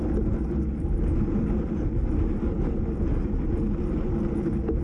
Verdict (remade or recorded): recorded